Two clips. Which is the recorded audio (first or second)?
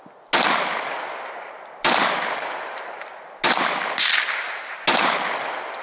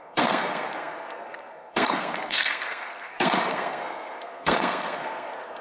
first